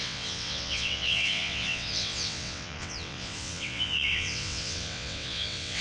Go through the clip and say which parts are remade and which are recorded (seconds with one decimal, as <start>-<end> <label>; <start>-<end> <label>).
0.0-5.8 remade